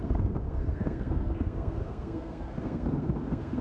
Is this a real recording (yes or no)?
no